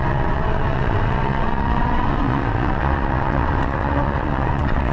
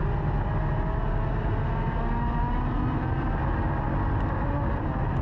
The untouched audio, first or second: second